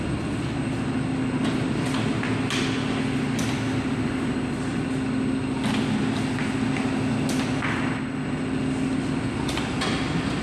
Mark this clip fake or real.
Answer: real